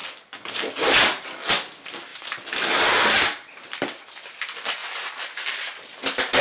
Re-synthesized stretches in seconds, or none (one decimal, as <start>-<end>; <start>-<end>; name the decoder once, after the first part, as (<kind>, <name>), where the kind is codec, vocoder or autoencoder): 0.0-1.2 (vocoder, BigVGAN v2); 2.1-3.8; 4.8-6.4

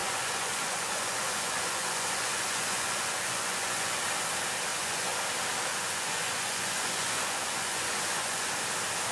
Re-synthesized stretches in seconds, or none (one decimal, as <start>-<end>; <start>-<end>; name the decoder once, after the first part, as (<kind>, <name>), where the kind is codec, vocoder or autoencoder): 0.0-4.0 (vocoder, Vocos); 4.7-5.2; 5.7-8.5

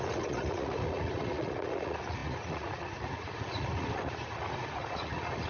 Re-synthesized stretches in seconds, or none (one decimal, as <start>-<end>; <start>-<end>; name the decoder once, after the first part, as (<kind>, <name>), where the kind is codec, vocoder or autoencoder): 0.0-5.5 (vocoder, Vocos)

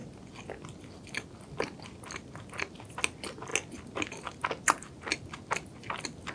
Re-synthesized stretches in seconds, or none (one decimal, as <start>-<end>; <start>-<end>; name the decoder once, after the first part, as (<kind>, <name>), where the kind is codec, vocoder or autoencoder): none